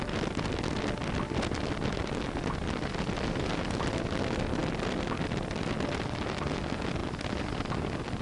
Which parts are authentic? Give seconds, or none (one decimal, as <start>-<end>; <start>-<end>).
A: 0.0-8.2